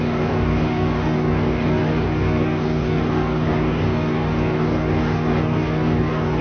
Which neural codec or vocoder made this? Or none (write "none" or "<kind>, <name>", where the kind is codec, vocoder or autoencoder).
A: codec, DAC